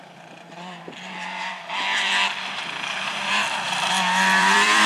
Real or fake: fake